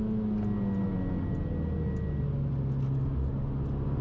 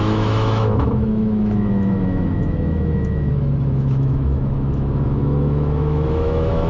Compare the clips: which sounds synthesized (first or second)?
second